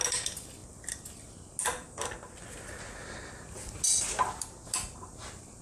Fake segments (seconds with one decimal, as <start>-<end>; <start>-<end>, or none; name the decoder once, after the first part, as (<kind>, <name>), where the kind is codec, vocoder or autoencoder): none